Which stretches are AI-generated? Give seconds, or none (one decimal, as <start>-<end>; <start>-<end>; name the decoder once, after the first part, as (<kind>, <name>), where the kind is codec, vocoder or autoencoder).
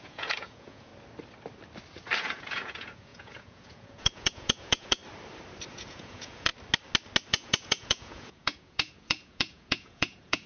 0.0-0.9 (vocoder, Vocos); 2.2-5.0; 5.7-6.5; 7.3-10.5